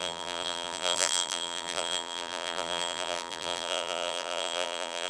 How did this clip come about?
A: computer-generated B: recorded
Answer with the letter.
A